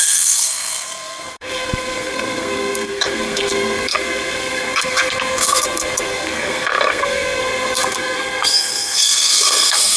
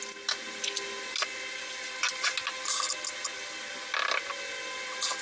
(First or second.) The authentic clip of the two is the second